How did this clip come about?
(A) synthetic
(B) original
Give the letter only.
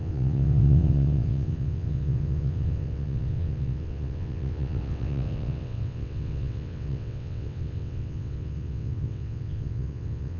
A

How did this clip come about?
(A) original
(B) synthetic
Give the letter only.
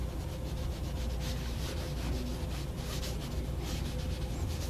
B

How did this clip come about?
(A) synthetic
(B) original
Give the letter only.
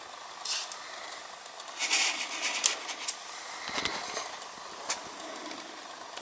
B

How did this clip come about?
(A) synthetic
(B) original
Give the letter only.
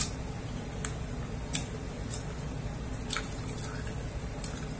B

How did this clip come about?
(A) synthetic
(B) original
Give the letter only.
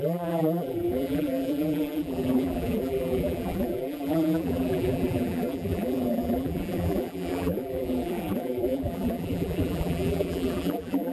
A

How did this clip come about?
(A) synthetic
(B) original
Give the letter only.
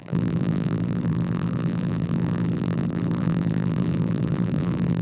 A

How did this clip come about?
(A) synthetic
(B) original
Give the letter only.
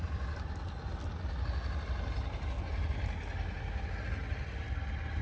B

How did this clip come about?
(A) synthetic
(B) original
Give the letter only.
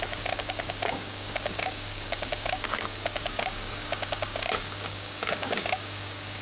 A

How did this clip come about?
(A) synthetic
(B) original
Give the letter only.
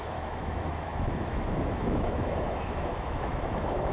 A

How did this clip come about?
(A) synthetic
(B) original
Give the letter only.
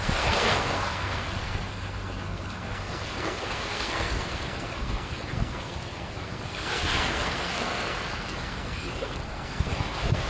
A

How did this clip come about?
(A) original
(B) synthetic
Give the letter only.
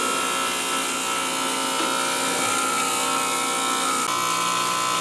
A